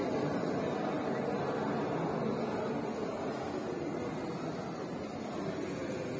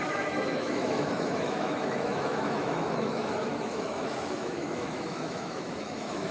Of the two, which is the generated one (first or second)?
second